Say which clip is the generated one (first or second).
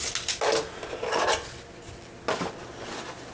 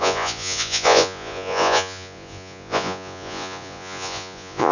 second